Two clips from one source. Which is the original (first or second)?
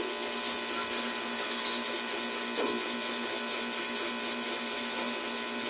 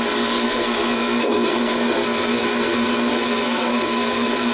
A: first